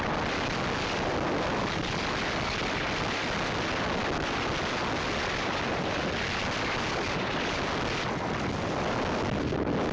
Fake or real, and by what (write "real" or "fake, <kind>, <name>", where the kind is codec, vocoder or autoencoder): real